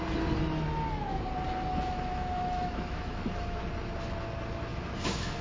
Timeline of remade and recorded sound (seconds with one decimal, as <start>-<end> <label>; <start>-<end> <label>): 0.0-1.7 recorded; 1.7-3.6 remade; 3.6-4.7 recorded; 4.7-5.4 remade